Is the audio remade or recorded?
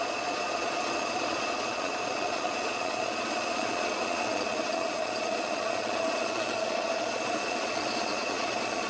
remade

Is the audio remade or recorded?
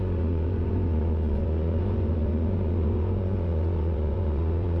remade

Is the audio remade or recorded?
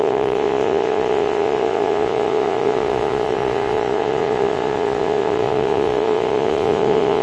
remade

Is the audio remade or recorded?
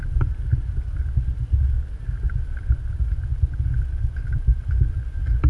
recorded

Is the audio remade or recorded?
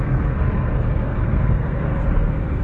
remade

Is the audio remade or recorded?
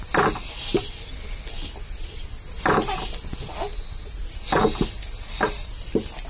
recorded